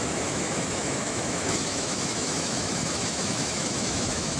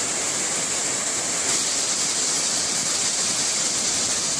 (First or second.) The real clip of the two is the second